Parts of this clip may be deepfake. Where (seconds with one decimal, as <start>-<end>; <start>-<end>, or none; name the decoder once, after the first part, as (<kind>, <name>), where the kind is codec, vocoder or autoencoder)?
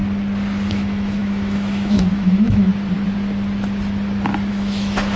0.7-2.7 (autoencoder, DAC-VAE); 4.5-5.2